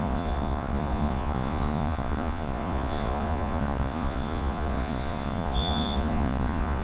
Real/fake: fake